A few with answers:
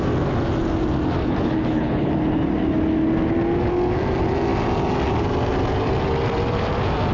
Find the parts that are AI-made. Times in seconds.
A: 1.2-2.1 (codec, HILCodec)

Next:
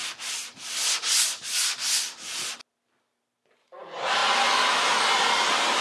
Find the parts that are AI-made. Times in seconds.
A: none

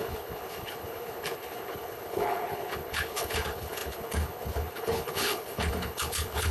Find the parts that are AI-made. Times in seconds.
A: 0.0-6.5 (codec, HILCodec)